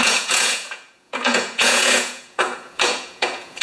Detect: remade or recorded remade